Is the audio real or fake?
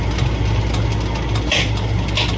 real